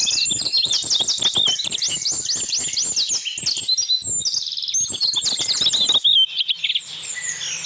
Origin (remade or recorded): recorded